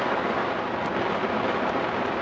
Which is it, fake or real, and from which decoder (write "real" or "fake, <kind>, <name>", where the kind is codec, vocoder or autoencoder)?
real